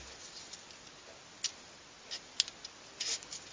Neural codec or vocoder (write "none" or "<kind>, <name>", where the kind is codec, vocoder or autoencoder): none